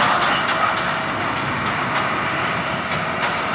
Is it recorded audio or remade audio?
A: recorded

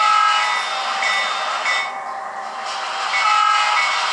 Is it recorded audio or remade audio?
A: recorded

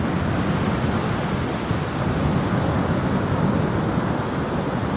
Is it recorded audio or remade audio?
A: recorded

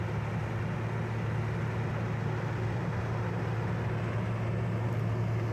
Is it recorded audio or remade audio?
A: recorded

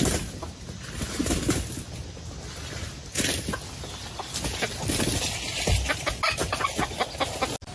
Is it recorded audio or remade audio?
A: recorded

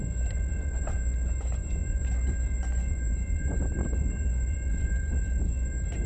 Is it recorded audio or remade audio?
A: remade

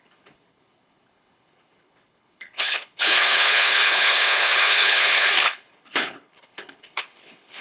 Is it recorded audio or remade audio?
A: remade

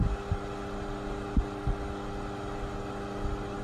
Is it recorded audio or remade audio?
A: recorded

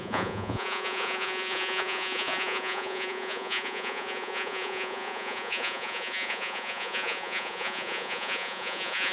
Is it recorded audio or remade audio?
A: remade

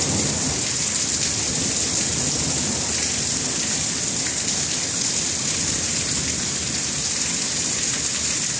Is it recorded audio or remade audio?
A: recorded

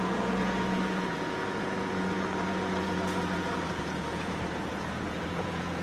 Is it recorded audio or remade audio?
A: remade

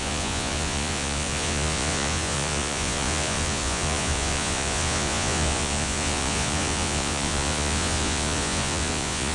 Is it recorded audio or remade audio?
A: remade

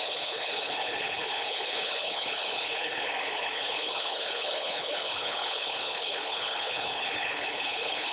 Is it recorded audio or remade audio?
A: remade